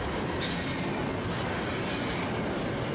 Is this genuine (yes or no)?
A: yes